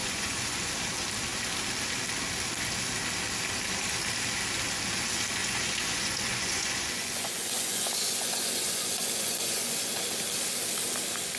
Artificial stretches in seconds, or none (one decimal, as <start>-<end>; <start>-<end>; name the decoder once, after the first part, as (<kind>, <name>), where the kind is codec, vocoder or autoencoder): 0.0-0.7 (vocoder, Vocos); 5.4-10.0